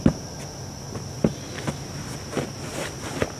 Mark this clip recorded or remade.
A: recorded